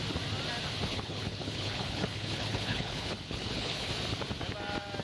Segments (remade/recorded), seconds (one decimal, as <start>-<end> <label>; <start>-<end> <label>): 0.0-0.9 recorded; 0.9-3.9 remade; 3.9-5.0 recorded